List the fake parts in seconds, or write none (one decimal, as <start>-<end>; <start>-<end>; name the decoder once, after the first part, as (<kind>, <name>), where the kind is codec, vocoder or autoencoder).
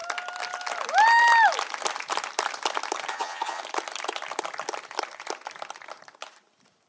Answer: 3.1-3.6 (vocoder, HiFi-GAN)